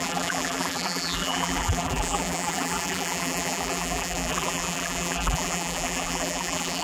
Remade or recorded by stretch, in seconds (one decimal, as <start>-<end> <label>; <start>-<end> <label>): 0.0-6.8 remade